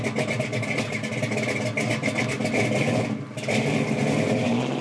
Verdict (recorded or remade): recorded